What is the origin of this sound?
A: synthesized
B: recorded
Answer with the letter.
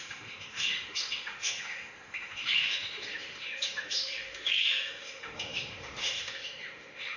A